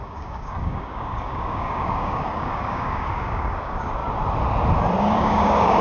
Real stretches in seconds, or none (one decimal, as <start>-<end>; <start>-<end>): 4.0-5.0